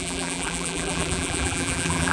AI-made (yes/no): yes